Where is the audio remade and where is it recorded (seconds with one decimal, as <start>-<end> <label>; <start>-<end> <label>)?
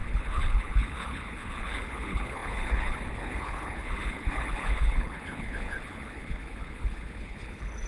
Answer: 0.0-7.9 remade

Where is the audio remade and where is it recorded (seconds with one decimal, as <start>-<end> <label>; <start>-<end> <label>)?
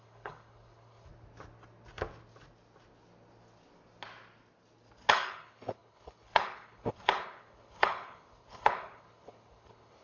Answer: 0.0-1.1 remade; 1.1-5.1 recorded; 5.1-10.0 remade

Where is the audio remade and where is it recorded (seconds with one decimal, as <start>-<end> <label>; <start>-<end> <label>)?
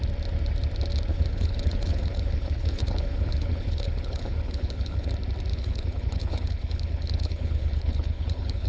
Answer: 0.0-1.1 recorded; 1.1-5.1 remade; 5.1-5.5 recorded; 5.5-8.7 remade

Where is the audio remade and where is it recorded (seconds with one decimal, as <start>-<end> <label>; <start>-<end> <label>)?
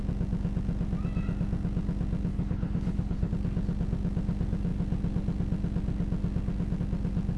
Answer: 0.0-2.3 recorded; 2.3-3.3 remade; 3.3-7.4 recorded